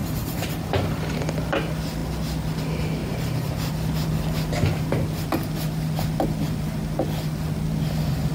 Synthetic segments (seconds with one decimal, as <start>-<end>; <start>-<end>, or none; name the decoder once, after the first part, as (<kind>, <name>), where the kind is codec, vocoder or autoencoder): 0.0-0.8 (vocoder, BigVGAN v2); 3.0-3.7